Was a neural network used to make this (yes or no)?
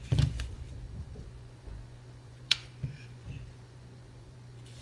yes